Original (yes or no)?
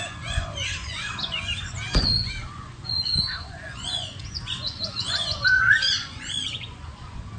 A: no